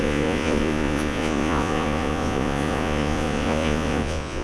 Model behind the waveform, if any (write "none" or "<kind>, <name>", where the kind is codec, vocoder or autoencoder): vocoder, Vocos